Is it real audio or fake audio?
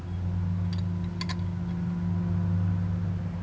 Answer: real